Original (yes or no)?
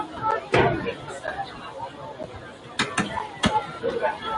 yes